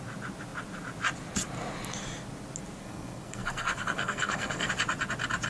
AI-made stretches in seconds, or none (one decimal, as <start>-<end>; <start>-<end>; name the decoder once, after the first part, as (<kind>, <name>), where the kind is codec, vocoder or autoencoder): 2.8-4.7 (codec, SNAC)